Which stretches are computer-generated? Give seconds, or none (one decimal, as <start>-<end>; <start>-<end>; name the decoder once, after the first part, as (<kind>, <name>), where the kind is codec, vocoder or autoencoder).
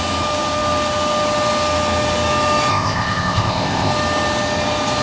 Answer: 2.7-3.9 (codec, ZipCodec)